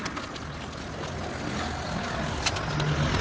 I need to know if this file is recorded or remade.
recorded